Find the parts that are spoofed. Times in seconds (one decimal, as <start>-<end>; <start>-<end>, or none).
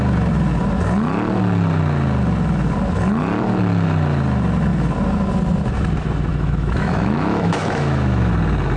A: 6.3-8.3